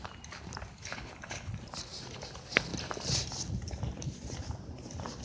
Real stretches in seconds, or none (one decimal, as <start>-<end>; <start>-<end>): 0.0-0.8; 1.5-5.2